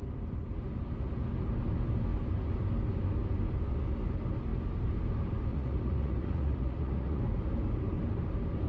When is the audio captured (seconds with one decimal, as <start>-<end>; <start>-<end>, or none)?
0.0-5.5; 7.2-8.7